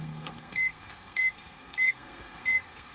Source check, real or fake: fake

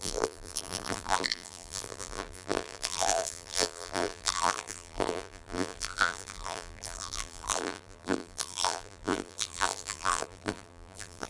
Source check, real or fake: fake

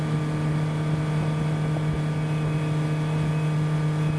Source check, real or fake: real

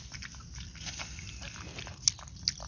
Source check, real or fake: real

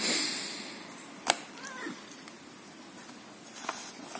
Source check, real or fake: real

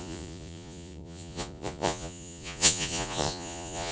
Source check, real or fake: fake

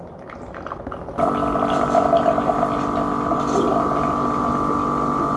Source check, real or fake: real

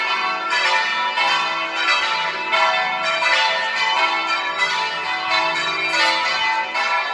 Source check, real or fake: real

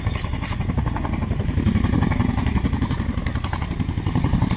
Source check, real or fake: fake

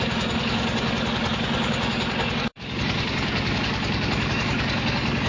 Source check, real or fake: fake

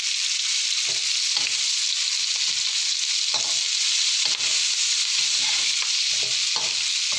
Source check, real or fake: real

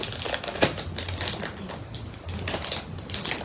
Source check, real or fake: real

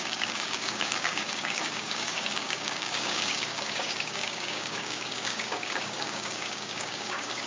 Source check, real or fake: fake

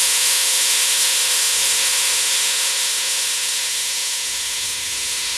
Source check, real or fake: fake